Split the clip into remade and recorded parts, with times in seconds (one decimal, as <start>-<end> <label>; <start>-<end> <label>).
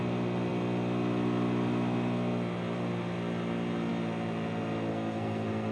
0.0-4.9 recorded; 4.9-5.7 remade